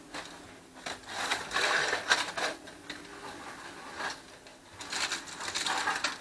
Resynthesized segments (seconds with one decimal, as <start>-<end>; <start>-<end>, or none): 1.3-4.1